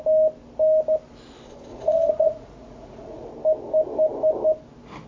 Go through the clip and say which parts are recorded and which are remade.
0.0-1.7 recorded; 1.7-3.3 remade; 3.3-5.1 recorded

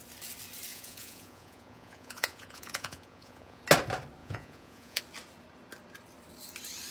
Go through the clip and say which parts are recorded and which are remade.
0.0-0.7 recorded; 0.7-3.6 remade; 3.6-4.2 recorded; 4.2-5.0 remade; 5.0-6.9 recorded

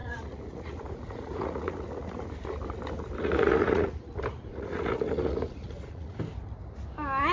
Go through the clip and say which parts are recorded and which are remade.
0.0-2.2 remade; 2.2-3.2 recorded; 3.2-4.1 remade; 4.1-4.5 recorded; 4.5-6.2 remade; 6.2-7.3 recorded